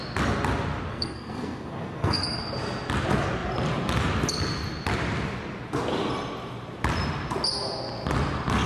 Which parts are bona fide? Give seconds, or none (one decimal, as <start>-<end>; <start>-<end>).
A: 0.0-0.9; 2.4-8.7